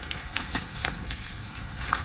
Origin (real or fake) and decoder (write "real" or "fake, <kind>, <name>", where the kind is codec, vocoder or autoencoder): fake, codec, SNAC